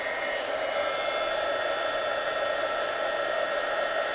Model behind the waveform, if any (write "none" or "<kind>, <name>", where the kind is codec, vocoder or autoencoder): none